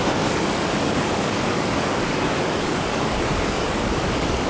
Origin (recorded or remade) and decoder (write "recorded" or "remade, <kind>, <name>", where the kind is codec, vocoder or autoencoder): remade, codec, DAC